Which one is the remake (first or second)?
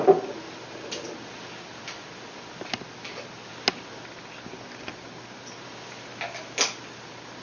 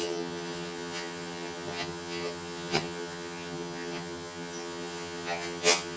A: second